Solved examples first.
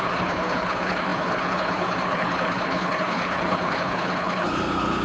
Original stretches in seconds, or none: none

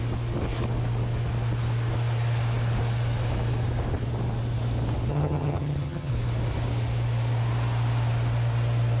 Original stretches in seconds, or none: 0.0-5.1; 6.1-9.0

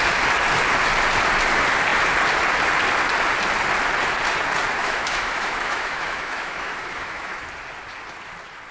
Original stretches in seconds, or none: 0.0-4.8; 7.4-8.7